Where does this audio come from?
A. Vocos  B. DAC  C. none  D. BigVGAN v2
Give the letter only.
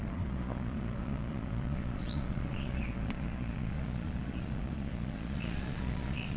A